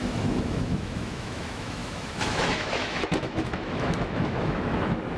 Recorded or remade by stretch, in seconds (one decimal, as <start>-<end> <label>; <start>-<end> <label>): 0.0-5.2 remade